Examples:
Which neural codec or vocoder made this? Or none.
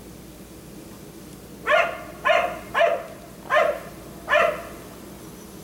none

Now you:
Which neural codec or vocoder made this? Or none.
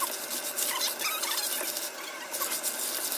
none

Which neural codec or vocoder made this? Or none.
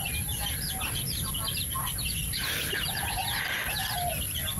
none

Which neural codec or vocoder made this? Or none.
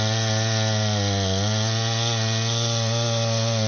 none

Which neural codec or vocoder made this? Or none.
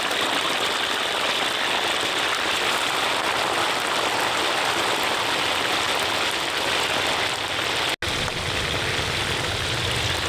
none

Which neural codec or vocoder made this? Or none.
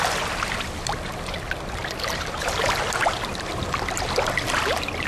none